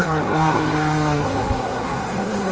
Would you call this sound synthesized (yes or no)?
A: yes